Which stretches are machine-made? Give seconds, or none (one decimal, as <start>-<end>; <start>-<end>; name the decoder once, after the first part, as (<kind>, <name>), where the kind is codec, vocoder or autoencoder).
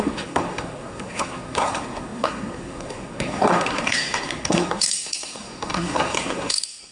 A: 0.0-6.9 (codec, SNAC)